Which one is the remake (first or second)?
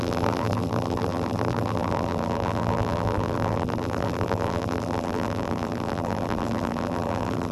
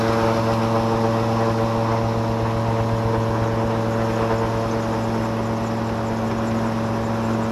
first